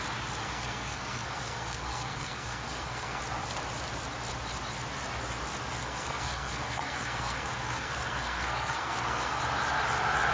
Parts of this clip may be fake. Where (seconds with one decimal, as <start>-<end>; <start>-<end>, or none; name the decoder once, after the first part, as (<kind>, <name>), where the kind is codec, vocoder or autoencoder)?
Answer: 0.4-3.2 (codec, SNAC); 5.8-9.4